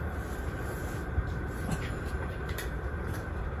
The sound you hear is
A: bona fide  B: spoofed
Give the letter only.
B